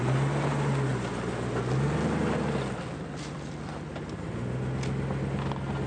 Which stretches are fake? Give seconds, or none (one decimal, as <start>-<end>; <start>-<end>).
none